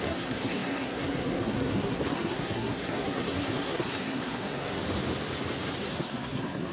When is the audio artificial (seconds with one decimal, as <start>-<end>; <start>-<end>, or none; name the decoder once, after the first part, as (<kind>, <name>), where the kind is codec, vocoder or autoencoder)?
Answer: 0.0-4.8 (codec, SNAC); 5.8-6.7